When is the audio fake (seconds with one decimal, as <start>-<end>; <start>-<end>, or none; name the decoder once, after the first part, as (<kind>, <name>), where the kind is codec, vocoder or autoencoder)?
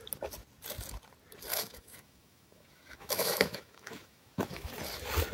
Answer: 1.5-4.7 (autoencoder, DAC-VAE)